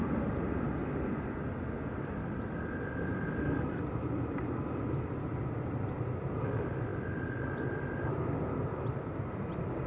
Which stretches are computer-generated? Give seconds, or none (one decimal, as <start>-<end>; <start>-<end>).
0.0-0.8; 3.8-6.9; 9.3-9.9